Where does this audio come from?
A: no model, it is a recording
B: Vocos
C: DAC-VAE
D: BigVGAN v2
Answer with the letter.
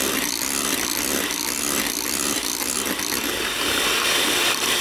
A